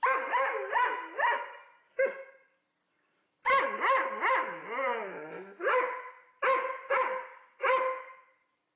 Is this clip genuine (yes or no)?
yes